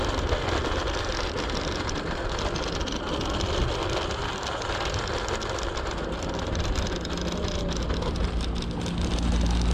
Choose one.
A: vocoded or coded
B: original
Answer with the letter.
B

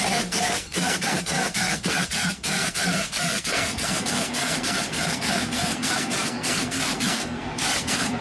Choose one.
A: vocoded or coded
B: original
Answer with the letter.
A